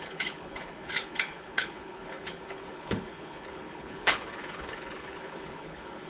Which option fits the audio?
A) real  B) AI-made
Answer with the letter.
B